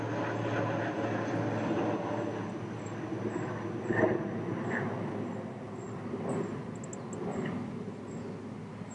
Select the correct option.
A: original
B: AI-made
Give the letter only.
A